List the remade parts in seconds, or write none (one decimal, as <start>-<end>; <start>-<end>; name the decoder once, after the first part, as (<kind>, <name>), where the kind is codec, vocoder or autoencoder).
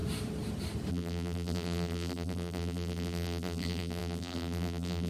0.9-5.1 (vocoder, BigVGAN v2)